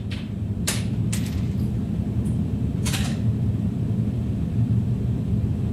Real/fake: fake